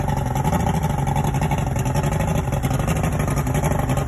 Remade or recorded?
recorded